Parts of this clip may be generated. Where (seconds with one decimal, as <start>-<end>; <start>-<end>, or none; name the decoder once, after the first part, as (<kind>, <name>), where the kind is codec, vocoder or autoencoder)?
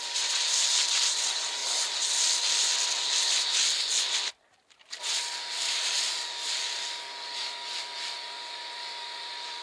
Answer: none